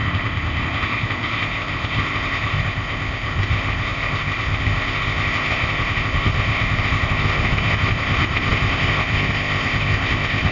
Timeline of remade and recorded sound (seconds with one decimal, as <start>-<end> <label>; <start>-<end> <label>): 0.0-10.5 remade